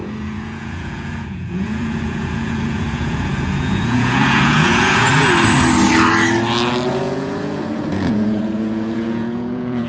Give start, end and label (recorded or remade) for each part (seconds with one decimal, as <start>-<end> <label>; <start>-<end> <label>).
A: 0.0-5.1 remade; 5.1-6.9 recorded; 6.9-9.9 remade